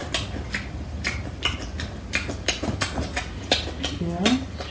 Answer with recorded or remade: recorded